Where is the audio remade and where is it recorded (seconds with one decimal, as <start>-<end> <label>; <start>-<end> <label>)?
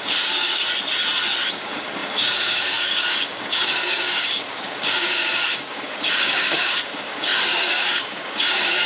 0.0-0.6 remade; 0.6-1.5 recorded; 1.5-8.9 remade